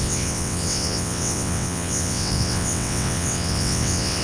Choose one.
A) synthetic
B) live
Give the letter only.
A